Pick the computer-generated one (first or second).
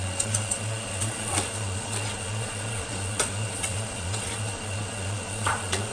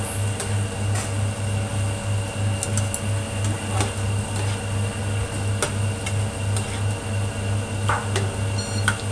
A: first